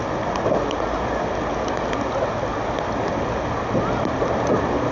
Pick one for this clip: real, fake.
real